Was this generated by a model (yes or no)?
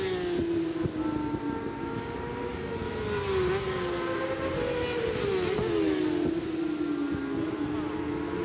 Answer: no